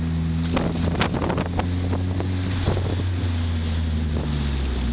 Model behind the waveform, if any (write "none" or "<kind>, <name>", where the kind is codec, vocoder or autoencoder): none